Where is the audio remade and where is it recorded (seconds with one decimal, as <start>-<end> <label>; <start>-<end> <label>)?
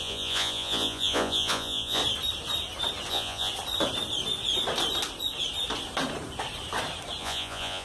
0.0-2.0 remade; 2.0-3.1 recorded; 3.1-3.5 remade; 3.5-7.2 recorded; 7.2-7.8 remade